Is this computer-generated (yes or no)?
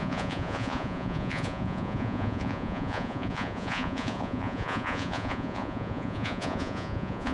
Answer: yes